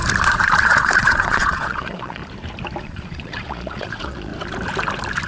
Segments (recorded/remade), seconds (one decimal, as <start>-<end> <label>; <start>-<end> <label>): 0.0-0.6 recorded; 0.6-2.2 remade; 2.2-2.8 recorded; 2.8-4.3 remade; 4.3-5.3 recorded